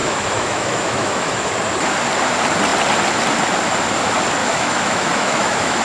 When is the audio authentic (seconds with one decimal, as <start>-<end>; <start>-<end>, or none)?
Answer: 1.5-4.4